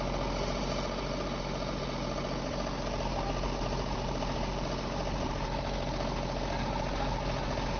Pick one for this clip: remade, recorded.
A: recorded